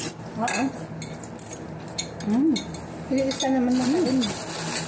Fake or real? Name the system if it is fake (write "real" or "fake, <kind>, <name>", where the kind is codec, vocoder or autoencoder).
real